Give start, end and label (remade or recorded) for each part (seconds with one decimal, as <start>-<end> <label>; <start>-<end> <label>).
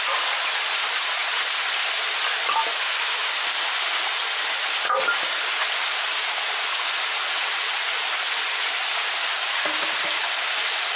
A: 0.0-11.0 recorded